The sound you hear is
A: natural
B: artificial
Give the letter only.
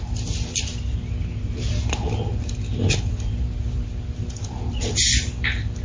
A